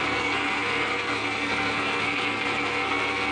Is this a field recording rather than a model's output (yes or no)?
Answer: no